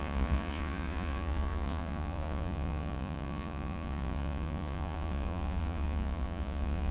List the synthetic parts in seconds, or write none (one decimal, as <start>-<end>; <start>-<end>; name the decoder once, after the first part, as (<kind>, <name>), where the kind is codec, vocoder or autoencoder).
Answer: 0.0-6.9 (vocoder, Vocos)